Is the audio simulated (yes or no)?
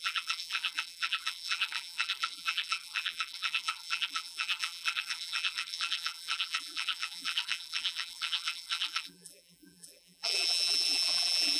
yes